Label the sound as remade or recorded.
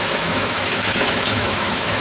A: remade